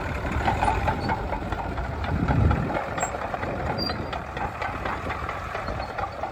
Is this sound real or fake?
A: fake